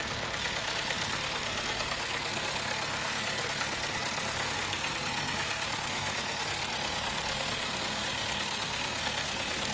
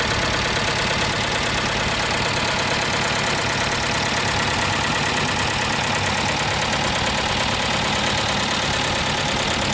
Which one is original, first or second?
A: second